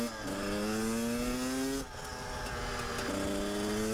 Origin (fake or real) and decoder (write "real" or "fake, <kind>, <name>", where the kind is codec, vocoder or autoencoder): real